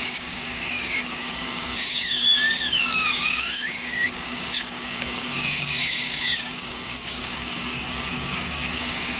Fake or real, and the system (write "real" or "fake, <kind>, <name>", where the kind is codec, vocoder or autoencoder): fake, codec, DAC